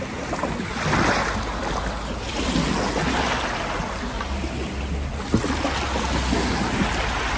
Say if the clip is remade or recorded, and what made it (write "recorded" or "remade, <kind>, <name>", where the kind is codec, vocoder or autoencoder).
recorded